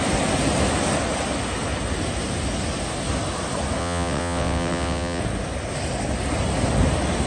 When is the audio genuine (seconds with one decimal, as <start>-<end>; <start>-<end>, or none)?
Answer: 0.0-3.8; 5.2-7.3